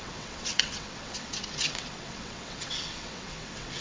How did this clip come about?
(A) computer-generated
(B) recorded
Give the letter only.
A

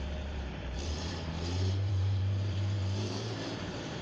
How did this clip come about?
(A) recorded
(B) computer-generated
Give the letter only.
B